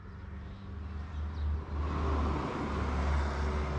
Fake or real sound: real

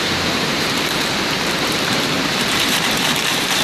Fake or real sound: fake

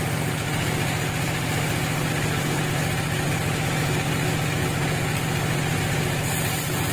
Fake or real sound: real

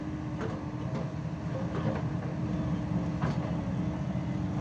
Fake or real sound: real